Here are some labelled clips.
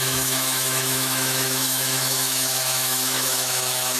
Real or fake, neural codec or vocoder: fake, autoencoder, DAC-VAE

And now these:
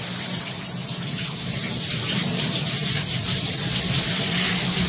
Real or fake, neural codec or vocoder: fake, vocoder, BigVGAN v2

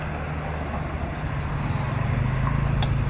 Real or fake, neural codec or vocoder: real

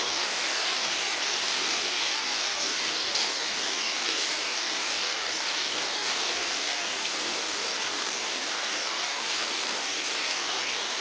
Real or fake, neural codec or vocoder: fake, codec, DAC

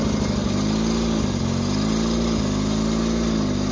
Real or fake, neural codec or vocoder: real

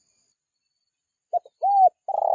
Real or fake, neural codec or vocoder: real